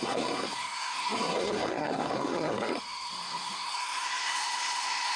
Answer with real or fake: fake